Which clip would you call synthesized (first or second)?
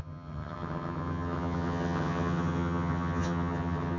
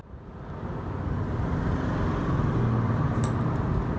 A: first